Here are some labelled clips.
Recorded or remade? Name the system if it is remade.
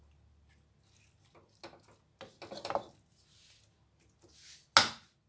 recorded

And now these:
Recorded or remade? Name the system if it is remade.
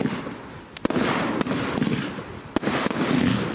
recorded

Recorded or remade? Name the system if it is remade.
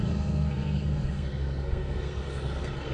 remade, codec, SNAC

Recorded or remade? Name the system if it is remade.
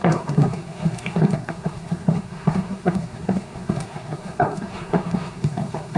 remade, codec, SNAC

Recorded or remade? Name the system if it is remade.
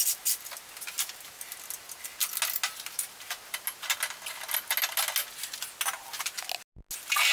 recorded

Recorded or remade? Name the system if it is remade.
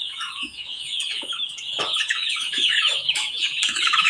remade, autoencoder, DAC-VAE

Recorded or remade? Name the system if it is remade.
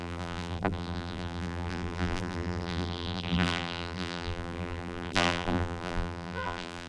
remade, vocoder, BigVGAN v2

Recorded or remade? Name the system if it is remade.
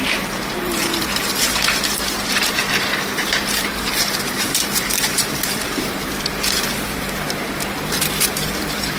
remade, vocoder, BigVGAN v2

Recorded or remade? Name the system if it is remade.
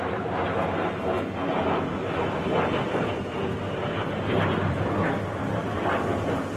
recorded